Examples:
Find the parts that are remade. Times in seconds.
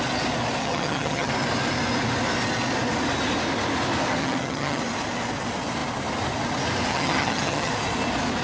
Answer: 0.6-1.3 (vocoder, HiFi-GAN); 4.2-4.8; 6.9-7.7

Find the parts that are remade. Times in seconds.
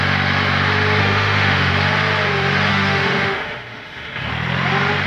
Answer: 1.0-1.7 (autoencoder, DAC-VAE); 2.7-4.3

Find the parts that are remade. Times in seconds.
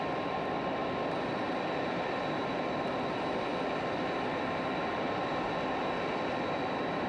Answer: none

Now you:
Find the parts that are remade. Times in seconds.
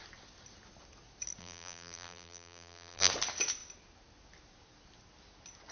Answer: 1.4-3.1 (vocoder, BigVGAN v2)